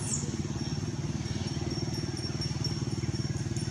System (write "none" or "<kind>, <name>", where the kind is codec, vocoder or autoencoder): none